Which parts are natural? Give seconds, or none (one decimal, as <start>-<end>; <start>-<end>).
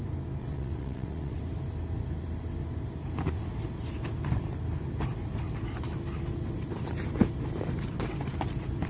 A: 0.0-0.4; 1.4-8.9